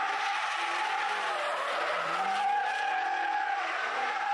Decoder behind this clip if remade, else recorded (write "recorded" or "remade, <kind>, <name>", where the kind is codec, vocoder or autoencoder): recorded